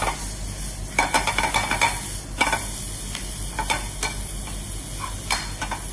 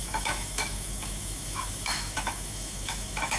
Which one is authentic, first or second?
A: first